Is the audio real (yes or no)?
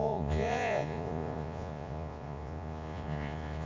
no